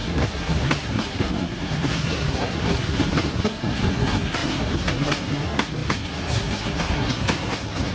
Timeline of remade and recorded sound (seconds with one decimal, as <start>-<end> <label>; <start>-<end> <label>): 0.0-7.9 remade